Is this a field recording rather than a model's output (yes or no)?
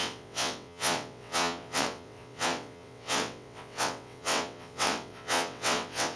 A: no